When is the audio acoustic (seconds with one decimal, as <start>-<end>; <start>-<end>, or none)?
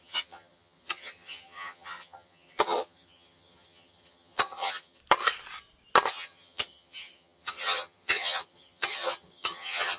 5.0-6.1